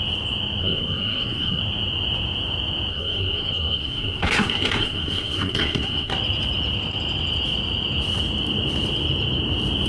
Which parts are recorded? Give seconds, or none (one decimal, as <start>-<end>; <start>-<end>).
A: 0.0-0.6; 1.6-2.9; 6.1-9.9